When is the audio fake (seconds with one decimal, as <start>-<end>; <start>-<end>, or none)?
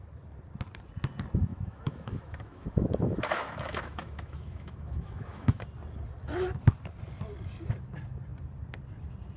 1.5-5.6